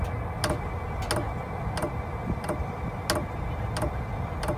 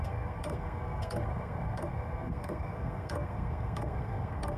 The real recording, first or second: first